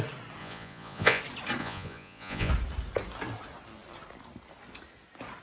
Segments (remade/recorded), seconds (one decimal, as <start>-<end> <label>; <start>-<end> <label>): 0.0-0.4 recorded; 0.4-1.2 remade; 1.2-1.6 recorded; 1.6-2.5 remade; 2.5-5.4 recorded